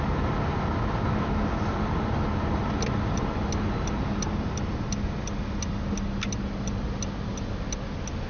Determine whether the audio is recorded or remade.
recorded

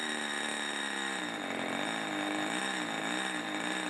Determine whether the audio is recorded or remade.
recorded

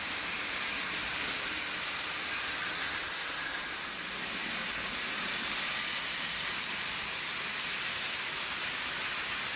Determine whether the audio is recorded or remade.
recorded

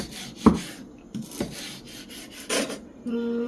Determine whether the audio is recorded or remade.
recorded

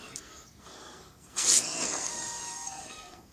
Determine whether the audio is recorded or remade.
remade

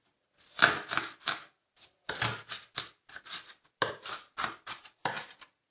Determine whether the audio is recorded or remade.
recorded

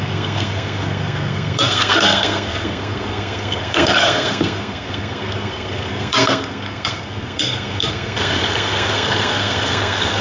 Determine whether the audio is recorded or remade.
remade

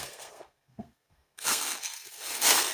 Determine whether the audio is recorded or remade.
remade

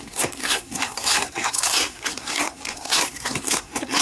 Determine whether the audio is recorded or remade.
remade